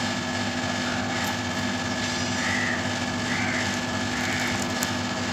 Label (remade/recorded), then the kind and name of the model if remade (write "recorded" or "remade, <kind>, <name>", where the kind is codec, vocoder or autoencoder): recorded